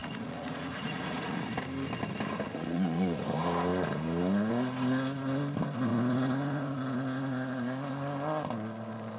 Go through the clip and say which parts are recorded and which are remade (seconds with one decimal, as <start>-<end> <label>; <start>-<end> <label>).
0.0-1.5 remade; 1.5-2.5 recorded; 2.5-3.2 remade; 3.2-9.2 recorded